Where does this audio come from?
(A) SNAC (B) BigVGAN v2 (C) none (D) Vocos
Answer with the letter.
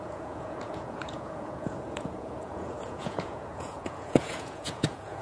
D